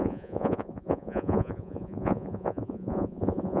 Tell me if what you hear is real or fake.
fake